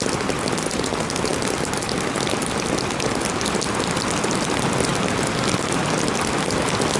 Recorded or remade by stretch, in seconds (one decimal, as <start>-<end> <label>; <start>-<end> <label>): 0.0-7.0 recorded